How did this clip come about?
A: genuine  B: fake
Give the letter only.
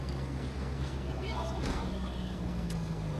B